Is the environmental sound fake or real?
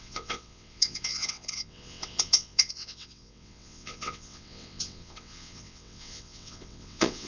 fake